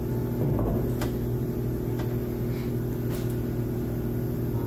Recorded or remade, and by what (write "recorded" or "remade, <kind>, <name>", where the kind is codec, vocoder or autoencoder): recorded